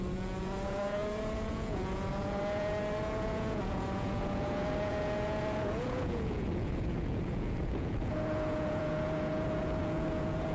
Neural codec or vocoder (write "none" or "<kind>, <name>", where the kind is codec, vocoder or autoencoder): vocoder, Vocos